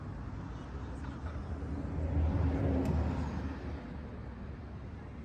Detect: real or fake real